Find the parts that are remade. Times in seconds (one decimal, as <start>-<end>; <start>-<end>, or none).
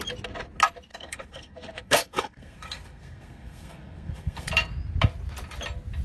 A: 0.9-4.5